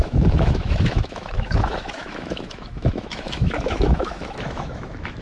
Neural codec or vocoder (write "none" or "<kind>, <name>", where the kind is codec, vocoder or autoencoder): autoencoder, DAC-VAE